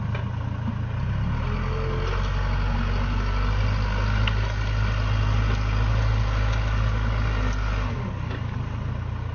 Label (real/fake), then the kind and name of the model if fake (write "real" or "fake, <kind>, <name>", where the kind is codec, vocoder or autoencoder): real